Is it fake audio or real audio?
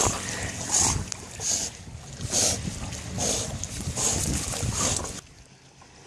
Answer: real